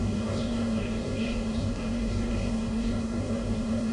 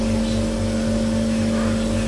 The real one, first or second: second